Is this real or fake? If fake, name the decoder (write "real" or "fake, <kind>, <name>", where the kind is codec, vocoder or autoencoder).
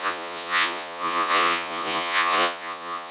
fake, vocoder, Vocos